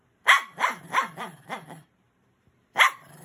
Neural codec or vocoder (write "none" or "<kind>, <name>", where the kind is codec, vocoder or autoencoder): vocoder, BigVGAN v2